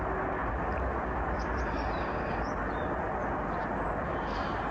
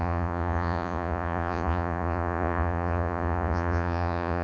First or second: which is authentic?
first